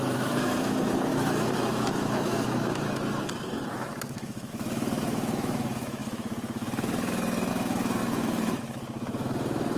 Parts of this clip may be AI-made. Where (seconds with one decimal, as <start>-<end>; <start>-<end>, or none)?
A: 0.0-9.8